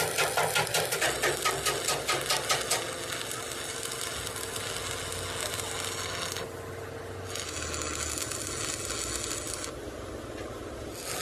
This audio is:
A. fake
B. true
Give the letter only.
B